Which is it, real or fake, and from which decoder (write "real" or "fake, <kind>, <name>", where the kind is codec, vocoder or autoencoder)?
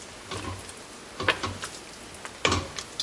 real